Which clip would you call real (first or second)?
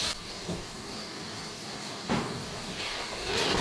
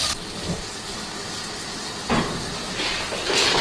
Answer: second